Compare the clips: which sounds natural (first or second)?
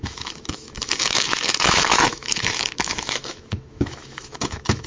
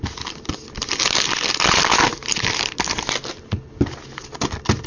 second